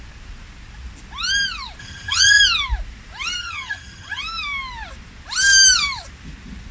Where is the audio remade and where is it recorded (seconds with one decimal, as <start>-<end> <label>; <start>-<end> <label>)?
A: 0.0-1.8 recorded; 1.8-2.4 remade; 2.4-3.4 recorded; 3.4-4.2 remade; 4.2-6.7 recorded

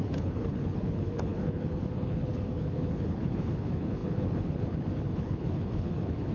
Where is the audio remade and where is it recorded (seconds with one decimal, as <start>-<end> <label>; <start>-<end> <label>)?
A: 0.0-6.3 remade